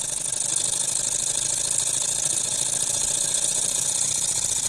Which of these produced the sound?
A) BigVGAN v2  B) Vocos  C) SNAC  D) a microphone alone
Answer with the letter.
B